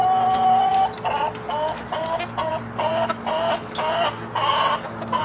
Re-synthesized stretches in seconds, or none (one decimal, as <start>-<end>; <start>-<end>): none